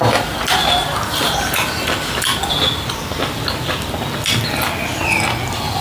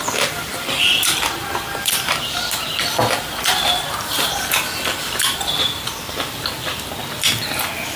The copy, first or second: second